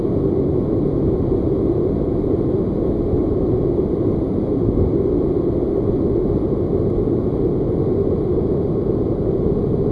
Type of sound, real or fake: real